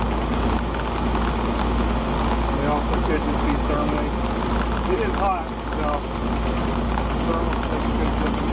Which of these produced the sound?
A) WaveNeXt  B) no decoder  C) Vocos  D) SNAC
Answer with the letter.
B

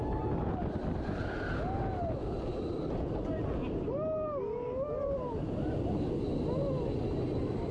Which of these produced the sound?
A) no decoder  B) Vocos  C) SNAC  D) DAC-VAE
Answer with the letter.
A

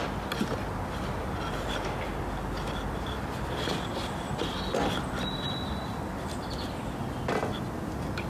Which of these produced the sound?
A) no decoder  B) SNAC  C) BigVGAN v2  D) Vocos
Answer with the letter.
A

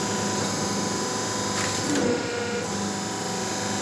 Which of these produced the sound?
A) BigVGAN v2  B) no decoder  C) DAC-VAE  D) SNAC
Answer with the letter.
B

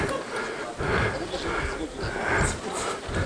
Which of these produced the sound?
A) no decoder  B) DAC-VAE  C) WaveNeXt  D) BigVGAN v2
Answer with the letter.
A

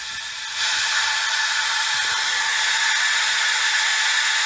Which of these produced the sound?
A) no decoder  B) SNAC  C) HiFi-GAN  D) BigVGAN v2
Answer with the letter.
A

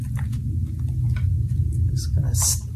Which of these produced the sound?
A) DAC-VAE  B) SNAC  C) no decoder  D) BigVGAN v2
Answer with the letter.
C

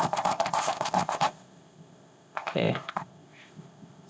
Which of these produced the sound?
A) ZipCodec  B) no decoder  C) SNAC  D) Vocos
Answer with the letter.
A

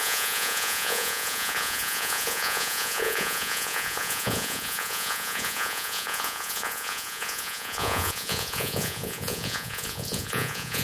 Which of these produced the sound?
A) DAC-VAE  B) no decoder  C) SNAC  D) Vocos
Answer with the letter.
D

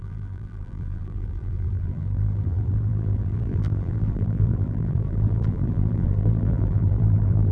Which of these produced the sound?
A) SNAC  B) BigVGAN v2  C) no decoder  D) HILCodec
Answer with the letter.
B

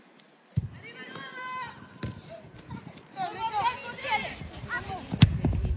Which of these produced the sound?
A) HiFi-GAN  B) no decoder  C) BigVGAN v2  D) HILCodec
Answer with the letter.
B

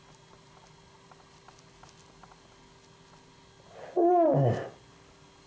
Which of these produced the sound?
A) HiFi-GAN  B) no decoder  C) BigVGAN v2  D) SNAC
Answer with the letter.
B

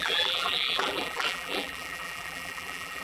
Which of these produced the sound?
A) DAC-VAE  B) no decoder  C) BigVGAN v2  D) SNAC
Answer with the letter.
C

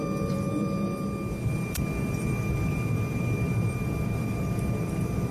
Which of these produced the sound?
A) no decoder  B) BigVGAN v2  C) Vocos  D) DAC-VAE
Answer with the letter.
B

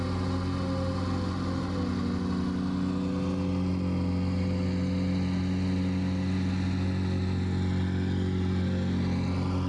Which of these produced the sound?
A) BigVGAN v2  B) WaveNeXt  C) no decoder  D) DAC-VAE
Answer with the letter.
C